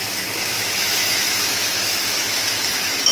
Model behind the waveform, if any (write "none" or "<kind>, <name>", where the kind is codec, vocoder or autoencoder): autoencoder, DAC-VAE